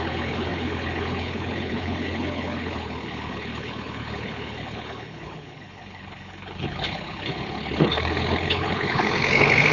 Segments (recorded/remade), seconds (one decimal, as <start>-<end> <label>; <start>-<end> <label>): 0.0-9.7 remade